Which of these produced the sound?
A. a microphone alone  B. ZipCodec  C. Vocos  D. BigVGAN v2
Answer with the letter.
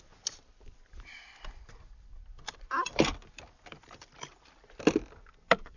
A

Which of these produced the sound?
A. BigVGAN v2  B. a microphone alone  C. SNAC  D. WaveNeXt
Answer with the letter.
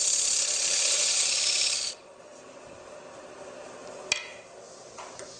B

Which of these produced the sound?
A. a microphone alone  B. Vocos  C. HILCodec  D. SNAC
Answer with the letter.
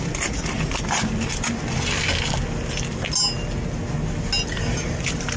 A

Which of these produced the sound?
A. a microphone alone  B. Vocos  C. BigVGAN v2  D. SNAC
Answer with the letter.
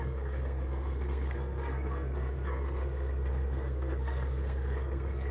D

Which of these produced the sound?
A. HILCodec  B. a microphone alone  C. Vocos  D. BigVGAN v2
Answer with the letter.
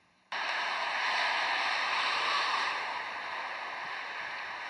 D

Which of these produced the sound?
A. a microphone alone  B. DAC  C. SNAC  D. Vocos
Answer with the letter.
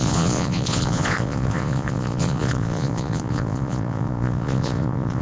D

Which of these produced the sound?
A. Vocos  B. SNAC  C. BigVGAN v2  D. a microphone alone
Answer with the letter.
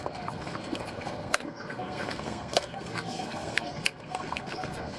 B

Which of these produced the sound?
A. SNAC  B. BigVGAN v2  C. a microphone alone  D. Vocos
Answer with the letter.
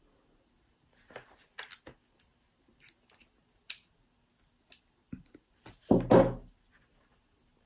C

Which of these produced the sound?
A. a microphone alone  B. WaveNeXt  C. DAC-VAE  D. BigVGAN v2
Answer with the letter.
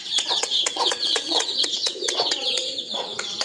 B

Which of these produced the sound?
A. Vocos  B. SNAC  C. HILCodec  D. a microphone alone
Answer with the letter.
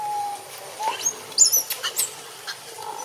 D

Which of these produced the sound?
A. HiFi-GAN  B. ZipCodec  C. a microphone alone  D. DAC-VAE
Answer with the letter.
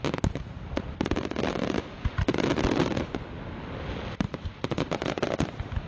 C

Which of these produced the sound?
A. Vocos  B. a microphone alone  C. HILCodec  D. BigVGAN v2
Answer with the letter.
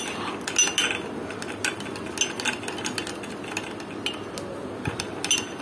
B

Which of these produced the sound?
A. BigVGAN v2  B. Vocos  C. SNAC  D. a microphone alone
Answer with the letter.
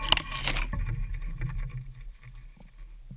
D